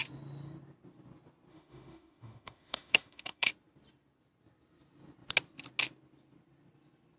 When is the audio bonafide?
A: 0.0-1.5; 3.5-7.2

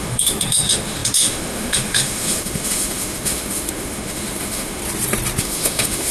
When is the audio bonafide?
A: 4.8-5.4

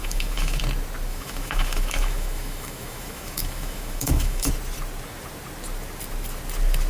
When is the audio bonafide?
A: 0.6-1.1; 4.5-6.9